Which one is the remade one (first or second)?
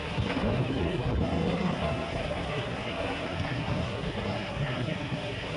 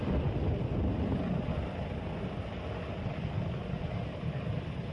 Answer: first